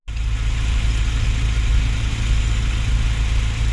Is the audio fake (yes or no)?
no